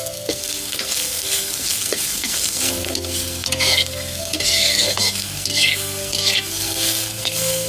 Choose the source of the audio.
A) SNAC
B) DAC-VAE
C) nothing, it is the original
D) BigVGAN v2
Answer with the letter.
A